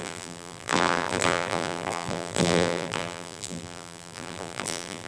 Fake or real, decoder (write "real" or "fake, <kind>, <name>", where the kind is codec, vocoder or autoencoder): fake, vocoder, BigVGAN v2